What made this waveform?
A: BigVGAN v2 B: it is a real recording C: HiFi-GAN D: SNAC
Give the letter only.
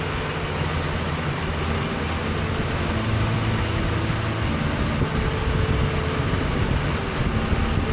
B